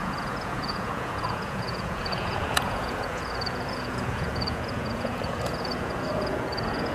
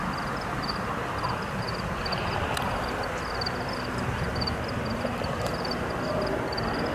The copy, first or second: first